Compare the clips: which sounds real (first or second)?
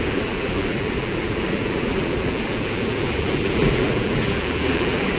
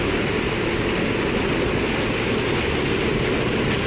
second